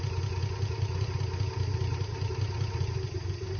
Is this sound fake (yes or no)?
no